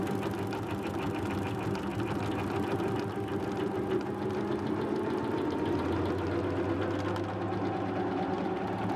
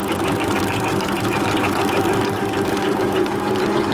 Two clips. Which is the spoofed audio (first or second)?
second